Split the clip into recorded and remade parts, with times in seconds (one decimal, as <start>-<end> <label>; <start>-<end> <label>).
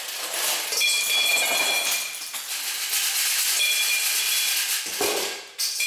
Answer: 0.0-5.9 recorded